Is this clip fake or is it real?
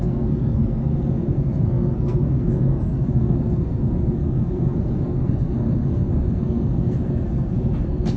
fake